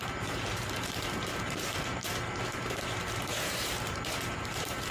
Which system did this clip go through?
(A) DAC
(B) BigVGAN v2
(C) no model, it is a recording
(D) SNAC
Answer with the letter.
B